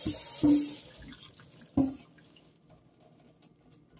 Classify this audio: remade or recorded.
recorded